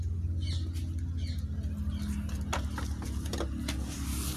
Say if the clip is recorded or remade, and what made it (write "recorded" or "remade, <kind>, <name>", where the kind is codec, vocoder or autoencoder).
recorded